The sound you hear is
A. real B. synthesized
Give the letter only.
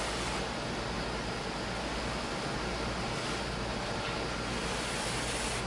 A